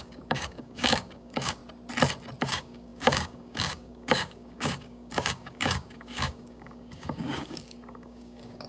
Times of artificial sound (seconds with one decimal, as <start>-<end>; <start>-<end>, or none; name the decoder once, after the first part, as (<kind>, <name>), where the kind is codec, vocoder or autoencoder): 0.0-1.6 (codec, DAC); 2.4-8.7